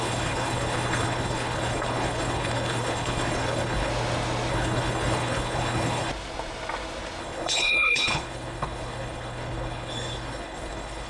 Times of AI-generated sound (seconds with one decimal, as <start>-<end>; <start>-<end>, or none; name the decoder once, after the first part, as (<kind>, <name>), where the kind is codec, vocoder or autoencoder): 0.0-3.9 (codec, HILCodec); 4.5-6.1; 7.2-11.1